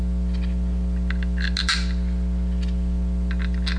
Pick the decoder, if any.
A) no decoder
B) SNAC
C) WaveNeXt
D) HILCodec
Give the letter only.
A